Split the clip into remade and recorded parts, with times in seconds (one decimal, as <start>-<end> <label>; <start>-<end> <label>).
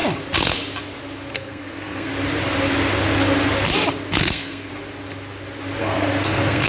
0.0-1.3 recorded; 1.3-2.1 remade; 2.1-4.2 recorded; 4.2-4.7 remade; 4.7-5.8 recorded; 5.8-6.7 remade